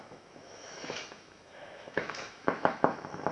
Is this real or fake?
fake